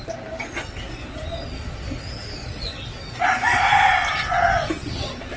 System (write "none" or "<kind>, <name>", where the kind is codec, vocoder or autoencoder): none